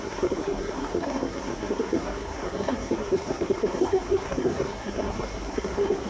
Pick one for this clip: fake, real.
fake